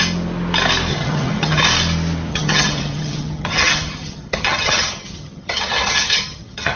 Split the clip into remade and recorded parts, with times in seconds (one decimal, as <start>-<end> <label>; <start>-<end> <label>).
0.0-0.9 recorded; 0.9-1.6 remade; 1.6-2.3 recorded; 2.3-6.8 remade